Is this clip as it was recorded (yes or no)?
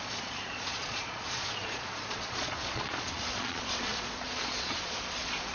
no